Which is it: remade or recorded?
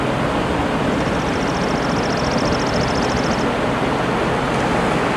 recorded